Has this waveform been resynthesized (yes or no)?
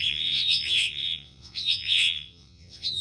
yes